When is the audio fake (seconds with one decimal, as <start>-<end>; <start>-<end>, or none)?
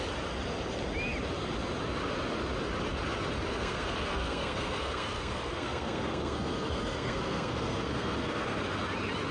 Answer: 3.5-8.6